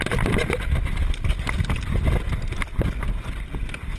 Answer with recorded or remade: recorded